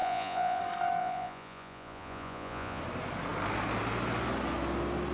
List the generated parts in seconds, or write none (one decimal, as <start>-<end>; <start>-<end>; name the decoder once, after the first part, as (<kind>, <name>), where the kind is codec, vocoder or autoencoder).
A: 0.0-0.6 (vocoder, Vocos); 1.0-2.8